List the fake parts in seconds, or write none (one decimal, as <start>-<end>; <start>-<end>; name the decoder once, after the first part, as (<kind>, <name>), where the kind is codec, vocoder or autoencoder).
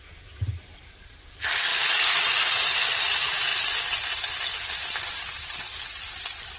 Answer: none